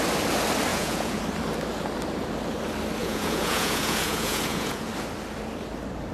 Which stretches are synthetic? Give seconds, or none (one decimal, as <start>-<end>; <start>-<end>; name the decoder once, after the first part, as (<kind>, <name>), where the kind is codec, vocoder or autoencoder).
0.7-1.2 (vocoder, Vocos); 3.0-4.9